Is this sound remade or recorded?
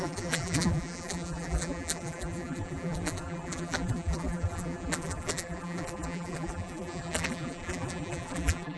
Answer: remade